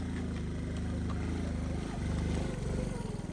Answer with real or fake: real